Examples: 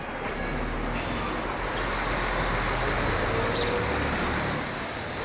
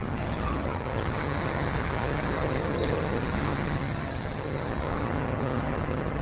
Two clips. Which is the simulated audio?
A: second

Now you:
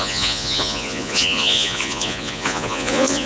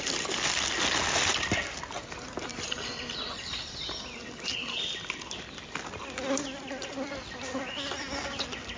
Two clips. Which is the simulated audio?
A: first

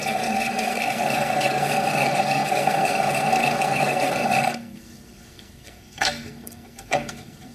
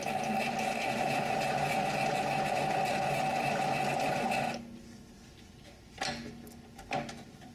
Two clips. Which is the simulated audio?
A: first